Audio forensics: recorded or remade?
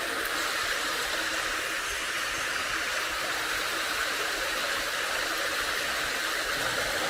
recorded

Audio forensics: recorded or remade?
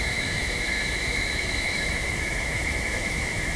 remade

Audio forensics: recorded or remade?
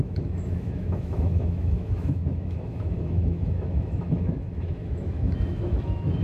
remade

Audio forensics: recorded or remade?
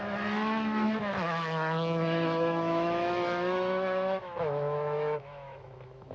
remade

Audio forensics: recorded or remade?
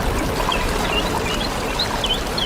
recorded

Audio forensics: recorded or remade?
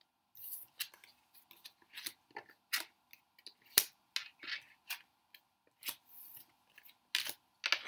recorded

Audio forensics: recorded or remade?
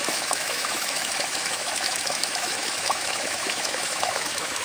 remade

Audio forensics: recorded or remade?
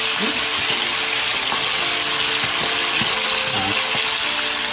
recorded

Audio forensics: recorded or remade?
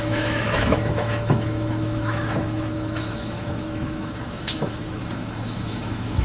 remade